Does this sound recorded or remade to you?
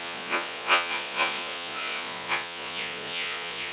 remade